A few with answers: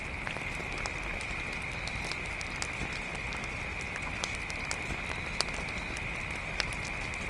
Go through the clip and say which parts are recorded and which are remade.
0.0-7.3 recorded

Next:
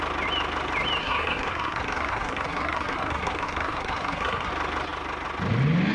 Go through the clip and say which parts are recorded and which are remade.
0.0-1.0 recorded; 1.0-4.5 remade; 4.5-5.9 recorded

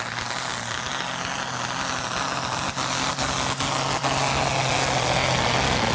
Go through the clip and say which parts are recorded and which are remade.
0.0-5.9 recorded

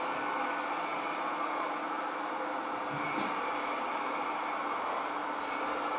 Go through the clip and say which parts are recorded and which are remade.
0.0-6.0 recorded

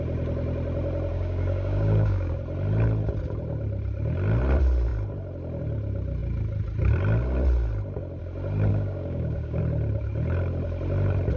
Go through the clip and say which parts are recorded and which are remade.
0.0-1.1 recorded; 1.1-2.4 remade; 2.4-8.7 recorded; 8.7-9.6 remade; 9.6-11.4 recorded